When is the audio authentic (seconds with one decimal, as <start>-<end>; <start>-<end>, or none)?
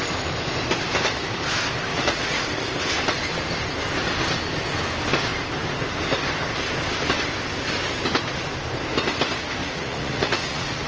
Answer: 0.0-1.9; 2.5-9.6